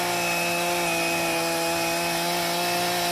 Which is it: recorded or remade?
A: recorded